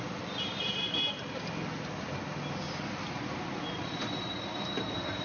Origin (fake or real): real